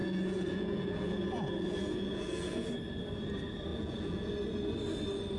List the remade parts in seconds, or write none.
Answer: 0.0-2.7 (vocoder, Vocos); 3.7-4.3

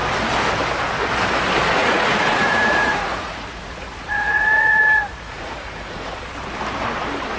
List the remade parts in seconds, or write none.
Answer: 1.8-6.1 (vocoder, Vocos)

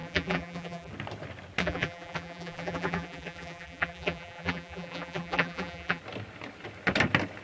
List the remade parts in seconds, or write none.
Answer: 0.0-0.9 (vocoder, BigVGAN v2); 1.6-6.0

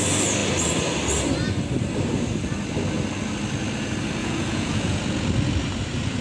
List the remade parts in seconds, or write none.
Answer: 4.2-5.0 (vocoder, Vocos)

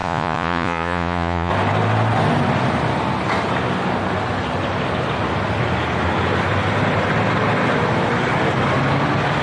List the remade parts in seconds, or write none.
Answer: 0.0-1.5 (vocoder, Vocos)

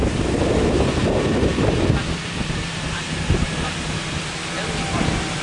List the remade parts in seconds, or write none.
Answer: none

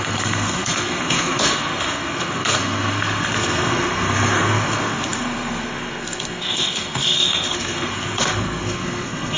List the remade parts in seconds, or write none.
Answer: 0.0-9.4 (codec, SNAC)

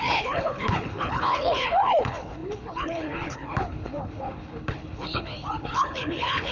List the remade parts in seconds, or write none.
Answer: 0.0-6.5 (codec, HILCodec)